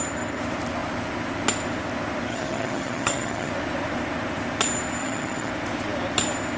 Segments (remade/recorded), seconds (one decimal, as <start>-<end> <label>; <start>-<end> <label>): 0.0-2.3 recorded; 2.3-3.5 remade; 3.5-5.0 recorded; 5.0-5.5 remade; 5.5-6.6 recorded

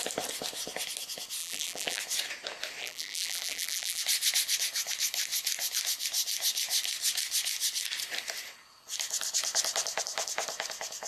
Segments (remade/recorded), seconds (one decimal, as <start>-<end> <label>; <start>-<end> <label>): 0.0-1.4 recorded; 1.4-2.0 remade; 2.0-2.8 recorded; 2.8-4.0 remade; 4.0-11.1 recorded

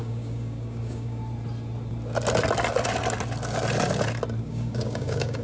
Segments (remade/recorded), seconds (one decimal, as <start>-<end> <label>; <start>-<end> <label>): 0.0-1.2 remade; 1.2-4.4 recorded; 4.4-5.4 remade